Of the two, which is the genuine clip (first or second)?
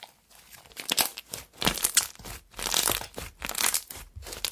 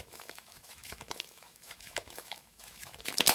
first